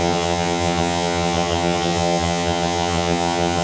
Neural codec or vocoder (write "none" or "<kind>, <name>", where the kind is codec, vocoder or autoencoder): vocoder, HiFi-GAN